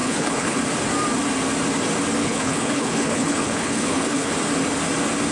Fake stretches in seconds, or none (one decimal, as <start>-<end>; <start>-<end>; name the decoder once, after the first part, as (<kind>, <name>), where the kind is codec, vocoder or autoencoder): 0.0-0.6 (codec, HILCodec); 2.2-4.3